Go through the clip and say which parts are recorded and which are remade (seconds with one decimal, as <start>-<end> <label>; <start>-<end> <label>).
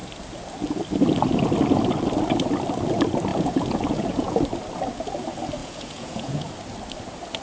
0.0-3.3 recorded; 3.3-4.4 remade; 4.4-5.6 recorded; 5.6-6.5 remade; 6.5-7.4 recorded